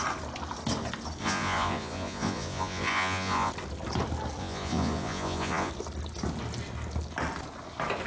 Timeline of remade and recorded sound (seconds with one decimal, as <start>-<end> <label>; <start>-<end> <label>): 0.0-1.2 recorded; 1.2-3.5 remade; 3.5-4.4 recorded; 4.4-5.7 remade; 5.7-8.1 recorded